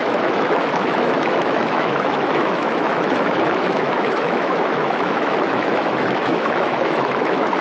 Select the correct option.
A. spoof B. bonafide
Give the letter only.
A